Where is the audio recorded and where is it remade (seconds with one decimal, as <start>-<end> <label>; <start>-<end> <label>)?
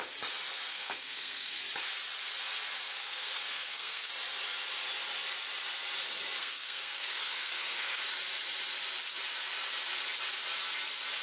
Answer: 0.0-0.7 recorded; 0.7-1.6 remade; 1.6-3.0 recorded; 3.0-4.1 remade; 4.1-6.4 recorded; 6.4-8.0 remade; 8.0-11.2 recorded